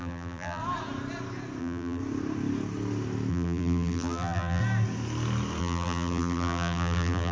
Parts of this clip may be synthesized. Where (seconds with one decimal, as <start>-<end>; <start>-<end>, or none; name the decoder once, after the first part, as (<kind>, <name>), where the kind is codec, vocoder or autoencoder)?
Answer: 0.0-0.6 (vocoder, BigVGAN v2); 1.6-2.0; 3.3-4.6; 5.6-7.3